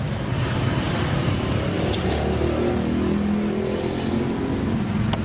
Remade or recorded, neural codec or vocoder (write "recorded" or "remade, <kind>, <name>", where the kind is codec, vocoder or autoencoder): recorded